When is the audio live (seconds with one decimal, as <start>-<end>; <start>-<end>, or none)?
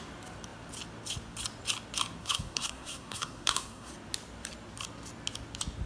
0.0-2.2; 3.9-5.9